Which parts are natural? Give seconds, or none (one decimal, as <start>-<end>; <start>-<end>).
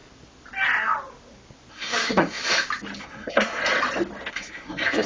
0.0-1.7; 2.4-3.0; 3.6-4.3